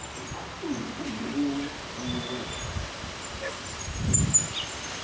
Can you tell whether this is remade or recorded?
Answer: recorded